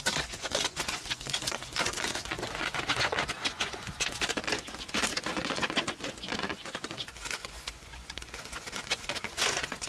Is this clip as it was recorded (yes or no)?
no